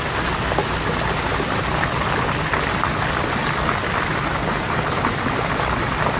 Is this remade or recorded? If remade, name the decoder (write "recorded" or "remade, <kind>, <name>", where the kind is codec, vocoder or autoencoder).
recorded